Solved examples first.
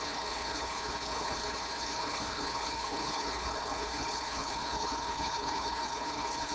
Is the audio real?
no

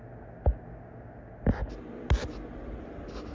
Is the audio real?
yes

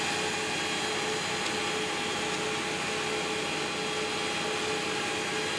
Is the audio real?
yes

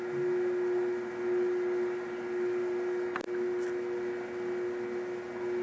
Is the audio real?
yes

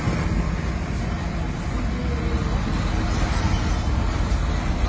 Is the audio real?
yes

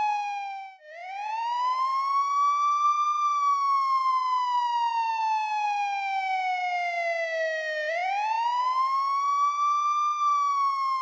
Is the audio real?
yes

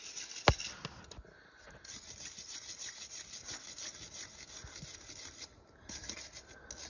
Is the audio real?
yes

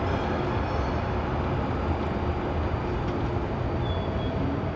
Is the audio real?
yes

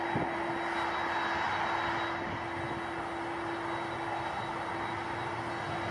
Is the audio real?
yes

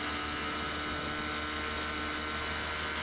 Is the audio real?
yes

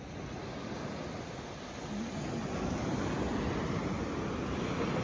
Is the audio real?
yes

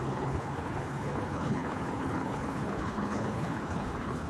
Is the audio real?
no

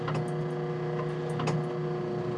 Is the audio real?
yes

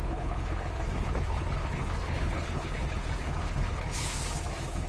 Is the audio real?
no